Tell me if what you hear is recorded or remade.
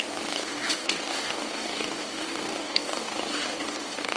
remade